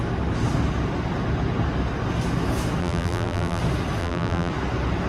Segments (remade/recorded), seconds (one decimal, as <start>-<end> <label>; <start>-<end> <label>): 0.0-2.8 recorded; 2.8-3.6 remade; 3.6-4.0 recorded; 4.0-4.5 remade; 4.5-5.1 recorded